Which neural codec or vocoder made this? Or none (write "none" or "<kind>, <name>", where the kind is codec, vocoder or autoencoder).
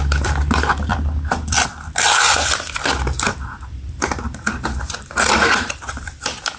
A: vocoder, BigVGAN v2